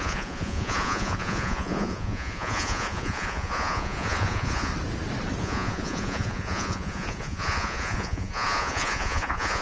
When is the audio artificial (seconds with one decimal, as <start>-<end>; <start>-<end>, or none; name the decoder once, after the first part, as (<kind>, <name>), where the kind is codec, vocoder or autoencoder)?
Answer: 0.0-4.7 (vocoder, Vocos); 5.4-9.6